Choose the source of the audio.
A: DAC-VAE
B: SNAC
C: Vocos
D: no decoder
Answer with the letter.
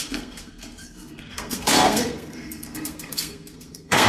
B